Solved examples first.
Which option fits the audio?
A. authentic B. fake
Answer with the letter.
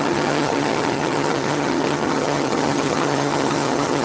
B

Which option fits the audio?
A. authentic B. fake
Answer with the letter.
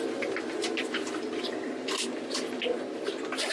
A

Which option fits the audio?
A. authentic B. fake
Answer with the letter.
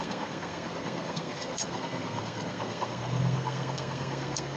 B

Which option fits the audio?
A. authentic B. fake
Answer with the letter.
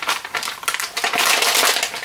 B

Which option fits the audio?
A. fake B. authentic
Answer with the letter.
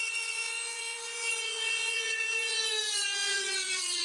A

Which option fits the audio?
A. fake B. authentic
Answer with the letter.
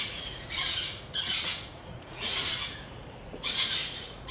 A